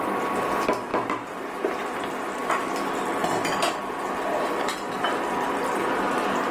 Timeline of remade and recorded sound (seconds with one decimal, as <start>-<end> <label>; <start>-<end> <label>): 0.0-0.9 recorded; 0.9-1.8 remade; 1.8-6.5 recorded